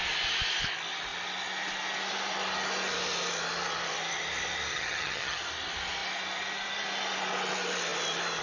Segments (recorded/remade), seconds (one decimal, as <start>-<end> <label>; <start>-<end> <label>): 0.0-4.7 recorded; 4.7-5.4 remade; 5.4-8.4 recorded